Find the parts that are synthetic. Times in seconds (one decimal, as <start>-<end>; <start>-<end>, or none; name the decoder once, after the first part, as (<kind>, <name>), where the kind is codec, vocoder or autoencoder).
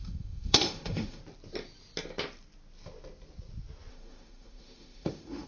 0.0-1.2 (autoencoder, DAC-VAE); 3.9-5.5